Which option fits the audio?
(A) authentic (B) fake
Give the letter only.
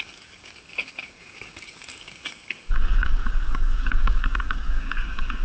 B